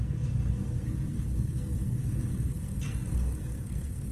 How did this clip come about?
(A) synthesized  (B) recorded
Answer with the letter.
A